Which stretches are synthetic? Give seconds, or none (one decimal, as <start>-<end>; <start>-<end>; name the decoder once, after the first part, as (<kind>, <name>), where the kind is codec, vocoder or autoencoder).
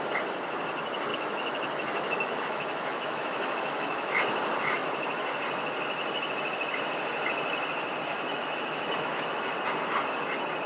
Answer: 1.1-4.1 (autoencoder, DAC-VAE); 8.1-9.5